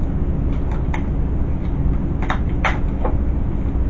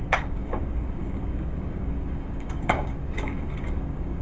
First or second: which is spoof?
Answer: second